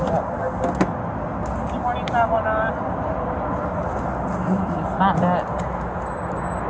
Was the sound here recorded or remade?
recorded